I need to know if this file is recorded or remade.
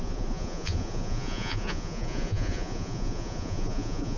remade